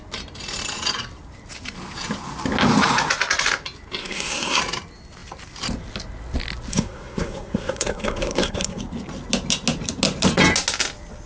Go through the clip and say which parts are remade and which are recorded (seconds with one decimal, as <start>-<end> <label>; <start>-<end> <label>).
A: 0.0-4.0 recorded; 4.0-4.6 remade; 4.6-6.7 recorded; 6.7-8.8 remade; 8.8-11.3 recorded